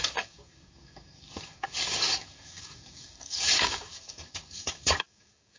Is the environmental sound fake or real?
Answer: fake